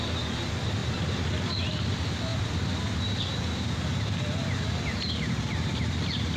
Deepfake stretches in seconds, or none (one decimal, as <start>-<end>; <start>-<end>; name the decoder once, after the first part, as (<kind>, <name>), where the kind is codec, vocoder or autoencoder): 0.8-1.6 (vocoder, BigVGAN v2); 2.3-5.3